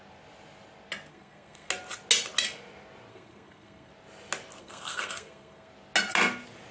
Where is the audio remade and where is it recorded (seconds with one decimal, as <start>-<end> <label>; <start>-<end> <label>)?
0.0-1.1 recorded; 1.1-1.7 remade; 1.7-3.1 recorded; 3.1-3.9 remade; 3.9-4.6 recorded; 4.6-5.7 remade; 5.7-6.7 recorded

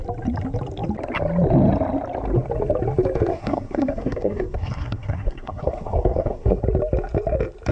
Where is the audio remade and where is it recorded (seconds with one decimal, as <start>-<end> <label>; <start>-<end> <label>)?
0.0-3.3 recorded; 3.3-6.6 remade; 6.6-7.7 recorded

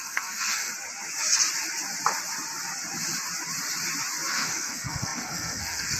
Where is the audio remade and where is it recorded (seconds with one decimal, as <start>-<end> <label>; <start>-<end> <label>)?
0.0-0.7 remade; 0.7-4.3 recorded; 4.3-6.0 remade

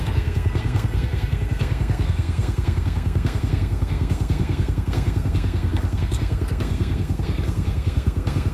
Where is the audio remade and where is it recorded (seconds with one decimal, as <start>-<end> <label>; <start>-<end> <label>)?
0.0-8.5 remade

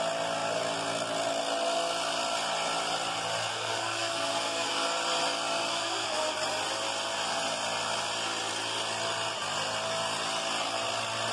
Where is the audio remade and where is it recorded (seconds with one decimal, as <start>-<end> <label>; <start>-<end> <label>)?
0.0-3.5 recorded; 3.5-4.7 remade; 4.7-5.7 recorded; 5.7-6.3 remade; 6.3-11.3 recorded

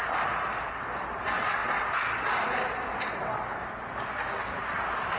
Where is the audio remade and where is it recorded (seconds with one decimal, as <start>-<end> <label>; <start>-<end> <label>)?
0.0-5.2 recorded

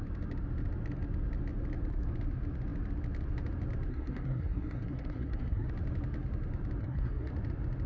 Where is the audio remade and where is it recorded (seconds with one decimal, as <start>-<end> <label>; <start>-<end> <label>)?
0.0-3.9 recorded; 3.9-5.7 remade; 5.7-6.8 recorded; 6.8-7.3 remade; 7.3-7.9 recorded

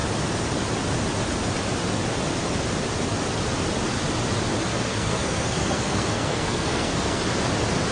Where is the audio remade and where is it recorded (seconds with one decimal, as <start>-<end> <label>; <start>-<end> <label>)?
0.0-4.7 recorded; 4.7-7.2 remade; 7.2-7.9 recorded